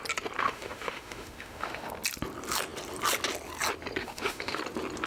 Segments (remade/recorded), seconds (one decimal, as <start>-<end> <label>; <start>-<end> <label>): 0.0-0.4 recorded; 0.4-1.9 remade; 1.9-4.0 recorded; 4.0-4.6 remade; 4.6-5.1 recorded